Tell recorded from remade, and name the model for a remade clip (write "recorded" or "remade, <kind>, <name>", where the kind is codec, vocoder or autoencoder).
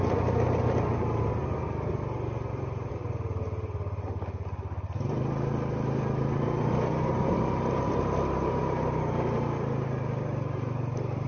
recorded